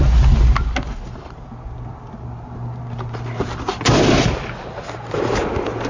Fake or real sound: real